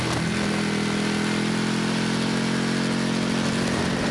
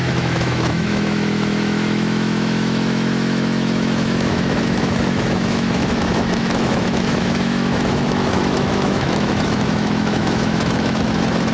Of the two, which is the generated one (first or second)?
second